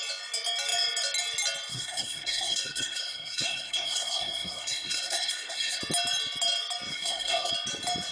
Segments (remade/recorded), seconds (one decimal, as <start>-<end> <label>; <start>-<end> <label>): 0.0-1.7 recorded; 1.7-5.8 remade; 5.8-6.9 recorded; 6.9-7.5 remade; 7.5-8.1 recorded